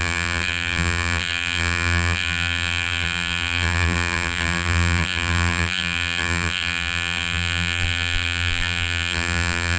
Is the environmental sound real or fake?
fake